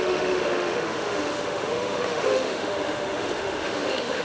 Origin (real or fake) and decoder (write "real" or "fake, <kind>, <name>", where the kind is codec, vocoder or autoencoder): fake, autoencoder, DAC-VAE